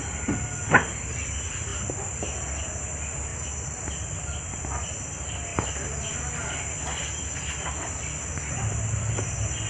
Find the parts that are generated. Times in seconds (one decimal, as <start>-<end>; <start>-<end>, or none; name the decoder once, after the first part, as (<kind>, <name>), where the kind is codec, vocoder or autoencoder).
none